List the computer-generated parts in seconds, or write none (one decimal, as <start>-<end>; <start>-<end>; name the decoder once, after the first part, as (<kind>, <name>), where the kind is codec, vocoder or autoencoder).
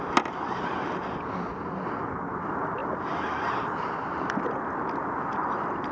none